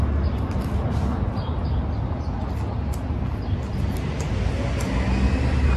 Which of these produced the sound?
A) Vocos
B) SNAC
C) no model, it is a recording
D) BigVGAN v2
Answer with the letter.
C